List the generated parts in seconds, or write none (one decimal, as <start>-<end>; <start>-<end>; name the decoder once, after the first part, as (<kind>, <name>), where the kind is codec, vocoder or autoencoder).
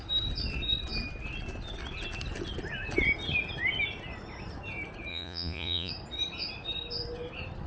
5.1-5.9 (vocoder, Vocos)